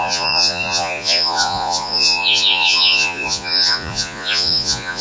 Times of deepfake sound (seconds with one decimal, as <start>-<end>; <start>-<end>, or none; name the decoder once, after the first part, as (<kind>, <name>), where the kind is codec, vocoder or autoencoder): 0.0-5.0 (vocoder, Vocos)